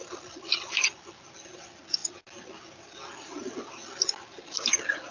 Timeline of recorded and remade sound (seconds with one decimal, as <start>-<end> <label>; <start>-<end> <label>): 0.0-5.1 recorded